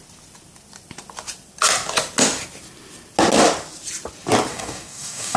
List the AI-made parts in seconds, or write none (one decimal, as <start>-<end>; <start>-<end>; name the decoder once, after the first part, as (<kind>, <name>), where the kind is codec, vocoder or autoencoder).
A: 4.5-5.4 (codec, DAC)